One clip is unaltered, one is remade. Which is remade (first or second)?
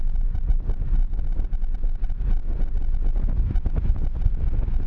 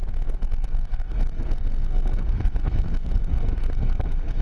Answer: second